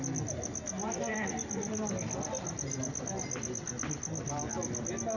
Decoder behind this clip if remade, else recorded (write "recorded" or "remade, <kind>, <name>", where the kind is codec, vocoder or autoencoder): recorded